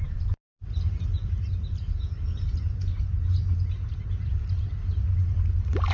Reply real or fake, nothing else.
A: real